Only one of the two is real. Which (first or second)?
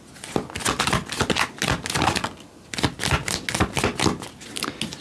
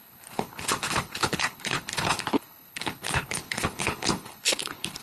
first